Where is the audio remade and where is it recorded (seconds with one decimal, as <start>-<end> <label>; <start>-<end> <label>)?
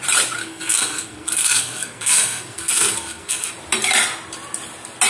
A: 0.0-0.4 recorded; 0.4-3.5 remade; 3.5-5.1 recorded